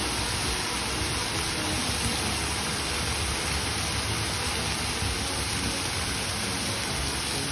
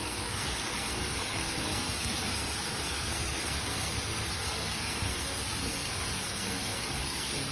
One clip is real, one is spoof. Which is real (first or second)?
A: first